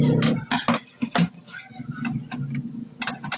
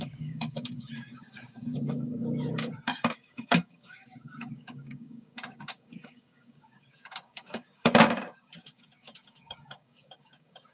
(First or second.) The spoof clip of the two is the second